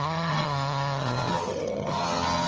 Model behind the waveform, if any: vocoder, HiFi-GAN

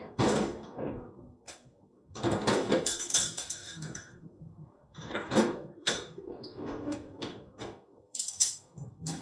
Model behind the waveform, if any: codec, DAC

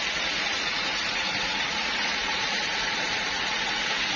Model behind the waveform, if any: vocoder, Vocos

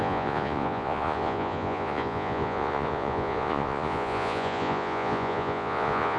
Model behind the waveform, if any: vocoder, Vocos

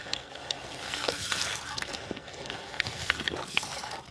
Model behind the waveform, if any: codec, SNAC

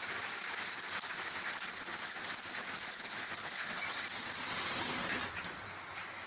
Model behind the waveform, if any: none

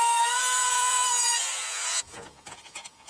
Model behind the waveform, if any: vocoder, Vocos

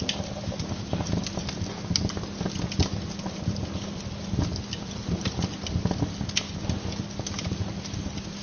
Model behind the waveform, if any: none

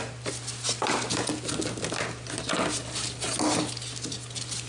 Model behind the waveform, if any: none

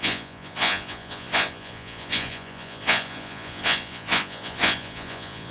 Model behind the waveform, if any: vocoder, Vocos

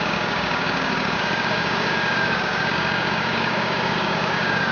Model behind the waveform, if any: codec, DAC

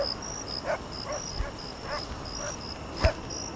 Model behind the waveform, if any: none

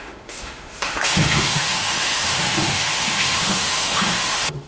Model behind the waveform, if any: autoencoder, DAC-VAE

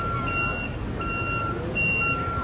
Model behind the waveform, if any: none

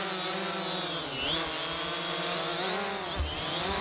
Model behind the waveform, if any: none